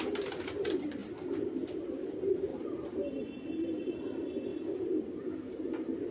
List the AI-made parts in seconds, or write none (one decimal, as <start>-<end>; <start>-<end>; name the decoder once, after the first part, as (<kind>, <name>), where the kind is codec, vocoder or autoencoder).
0.0-1.0 (vocoder, BigVGAN v2); 2.1-4.5